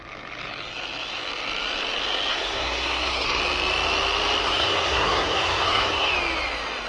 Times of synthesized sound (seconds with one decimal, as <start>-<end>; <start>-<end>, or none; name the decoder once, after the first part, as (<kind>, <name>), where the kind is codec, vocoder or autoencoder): 2.3-3.4 (codec, SNAC); 4.4-6.1